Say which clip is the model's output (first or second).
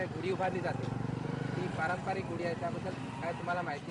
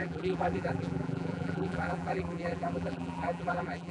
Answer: second